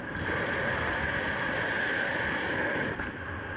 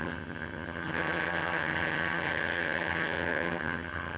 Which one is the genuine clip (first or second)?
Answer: first